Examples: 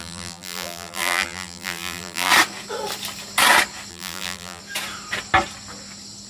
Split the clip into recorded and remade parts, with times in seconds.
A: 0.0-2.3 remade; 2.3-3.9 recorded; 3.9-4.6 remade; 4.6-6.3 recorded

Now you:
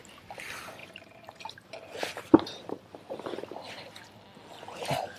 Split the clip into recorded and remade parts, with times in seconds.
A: 0.0-0.8 recorded; 0.8-3.9 remade; 3.9-5.2 recorded

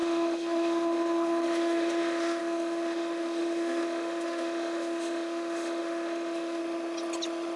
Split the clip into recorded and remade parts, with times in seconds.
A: 0.0-6.6 remade; 6.6-7.6 recorded